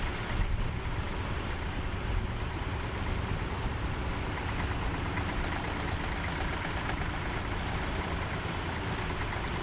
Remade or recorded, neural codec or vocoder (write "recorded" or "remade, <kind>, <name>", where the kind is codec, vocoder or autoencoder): recorded